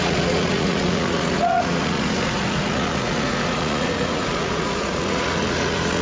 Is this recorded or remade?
remade